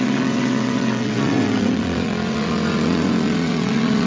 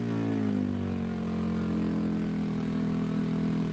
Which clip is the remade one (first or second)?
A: first